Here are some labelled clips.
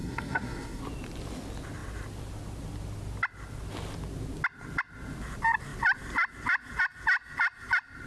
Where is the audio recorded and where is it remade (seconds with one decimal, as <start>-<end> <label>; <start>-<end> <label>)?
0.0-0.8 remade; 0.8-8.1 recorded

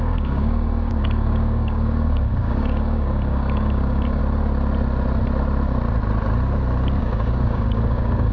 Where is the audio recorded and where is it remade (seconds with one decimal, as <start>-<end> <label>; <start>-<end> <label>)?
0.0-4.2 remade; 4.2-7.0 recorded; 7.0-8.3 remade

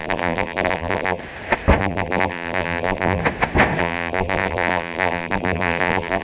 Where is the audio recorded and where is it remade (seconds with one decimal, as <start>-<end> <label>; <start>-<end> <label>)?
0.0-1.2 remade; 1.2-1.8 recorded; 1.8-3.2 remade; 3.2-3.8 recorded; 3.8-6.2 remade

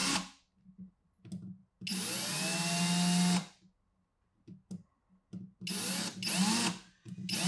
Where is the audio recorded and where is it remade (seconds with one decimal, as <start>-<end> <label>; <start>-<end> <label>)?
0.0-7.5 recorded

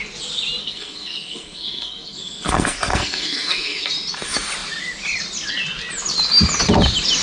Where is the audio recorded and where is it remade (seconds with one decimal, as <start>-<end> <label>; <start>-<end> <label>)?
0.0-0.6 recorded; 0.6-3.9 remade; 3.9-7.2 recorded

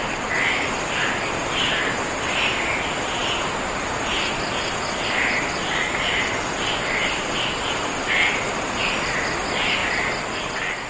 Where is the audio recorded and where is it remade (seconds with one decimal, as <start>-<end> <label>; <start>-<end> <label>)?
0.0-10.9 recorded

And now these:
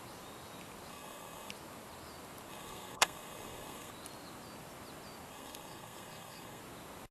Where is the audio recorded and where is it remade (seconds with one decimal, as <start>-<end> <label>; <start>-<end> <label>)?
0.0-0.9 recorded; 0.9-1.5 remade; 1.5-2.5 recorded; 2.5-3.9 remade; 3.9-5.3 recorded; 5.3-6.6 remade; 6.6-7.1 recorded